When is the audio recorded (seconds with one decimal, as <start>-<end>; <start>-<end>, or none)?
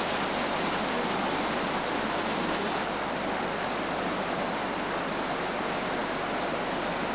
0.0-7.1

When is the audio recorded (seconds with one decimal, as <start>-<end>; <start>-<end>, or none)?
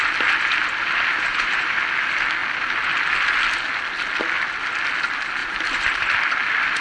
0.0-1.3; 1.8-5.4; 6.1-6.8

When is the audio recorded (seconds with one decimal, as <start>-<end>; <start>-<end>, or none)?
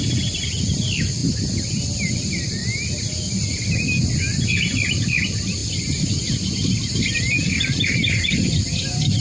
1.2-2.1; 2.6-4.7; 5.6-9.2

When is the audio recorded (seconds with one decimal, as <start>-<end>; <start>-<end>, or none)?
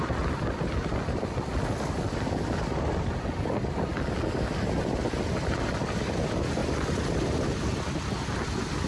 0.9-2.6; 3.9-5.3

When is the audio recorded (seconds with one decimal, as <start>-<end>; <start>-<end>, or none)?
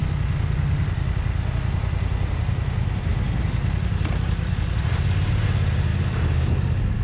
0.0-2.3; 3.1-3.8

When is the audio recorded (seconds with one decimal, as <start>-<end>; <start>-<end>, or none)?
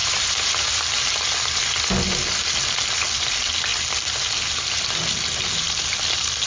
0.8-6.5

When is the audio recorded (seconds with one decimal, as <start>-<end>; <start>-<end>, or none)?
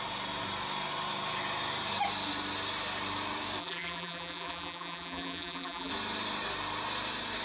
0.0-3.6; 5.9-7.4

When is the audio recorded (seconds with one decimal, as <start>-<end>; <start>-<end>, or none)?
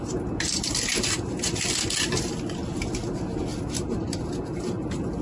0.0-3.5; 4.0-5.2